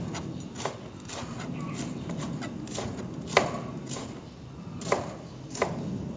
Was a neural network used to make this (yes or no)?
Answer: no